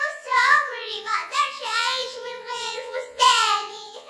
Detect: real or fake fake